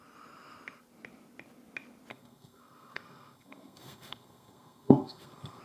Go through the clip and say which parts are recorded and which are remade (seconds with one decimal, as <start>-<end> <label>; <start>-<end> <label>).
0.0-2.1 recorded; 2.1-5.6 remade